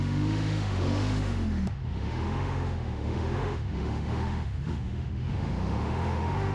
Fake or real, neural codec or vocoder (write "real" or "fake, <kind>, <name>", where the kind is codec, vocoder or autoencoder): fake, autoencoder, DAC-VAE